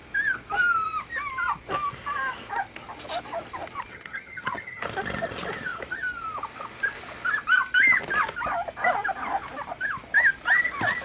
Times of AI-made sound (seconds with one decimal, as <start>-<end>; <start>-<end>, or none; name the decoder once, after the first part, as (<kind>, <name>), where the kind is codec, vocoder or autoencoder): 3.9-4.8 (vocoder, HiFi-GAN)